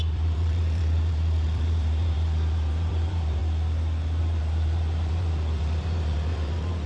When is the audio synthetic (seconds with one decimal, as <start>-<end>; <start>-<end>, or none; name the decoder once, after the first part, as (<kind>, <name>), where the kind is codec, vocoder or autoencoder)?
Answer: 0.0-3.4 (vocoder, BigVGAN v2); 4.2-6.9